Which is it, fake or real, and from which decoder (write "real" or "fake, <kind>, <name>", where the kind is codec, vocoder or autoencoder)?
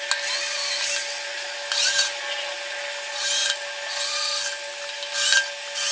real